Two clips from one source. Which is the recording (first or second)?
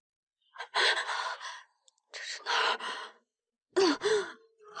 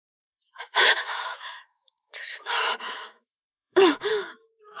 first